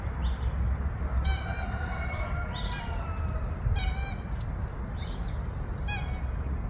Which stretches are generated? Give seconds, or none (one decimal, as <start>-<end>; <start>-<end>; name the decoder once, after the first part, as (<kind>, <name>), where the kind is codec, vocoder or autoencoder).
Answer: 1.5-3.7 (vocoder, BigVGAN v2)